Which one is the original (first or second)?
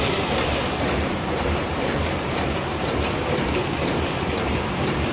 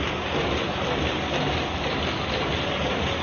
second